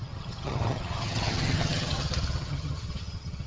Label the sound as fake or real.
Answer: fake